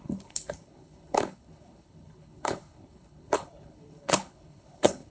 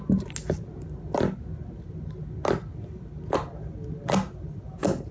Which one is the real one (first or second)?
second